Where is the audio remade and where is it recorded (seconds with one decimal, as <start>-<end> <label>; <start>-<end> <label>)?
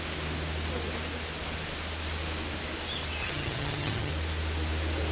0.0-3.2 recorded; 3.2-4.1 remade; 4.1-5.1 recorded